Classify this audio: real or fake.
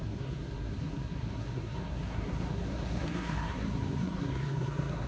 fake